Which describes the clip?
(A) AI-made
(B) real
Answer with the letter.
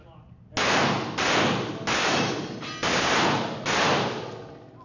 B